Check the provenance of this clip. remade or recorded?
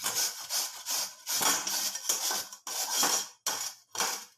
recorded